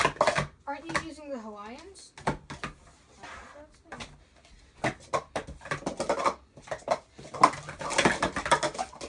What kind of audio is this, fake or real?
real